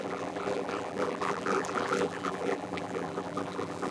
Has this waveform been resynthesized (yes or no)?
yes